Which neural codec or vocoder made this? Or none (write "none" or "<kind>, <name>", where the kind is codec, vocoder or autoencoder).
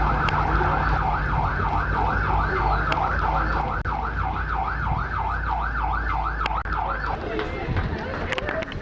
none